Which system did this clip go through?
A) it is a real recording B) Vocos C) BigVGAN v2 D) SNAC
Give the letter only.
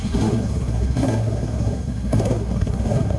D